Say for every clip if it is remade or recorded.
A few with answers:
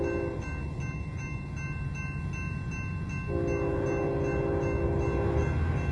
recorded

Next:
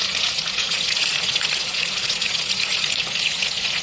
remade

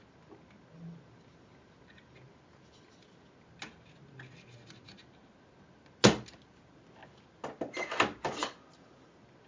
recorded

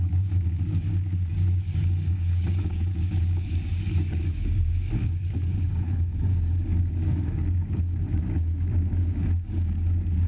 remade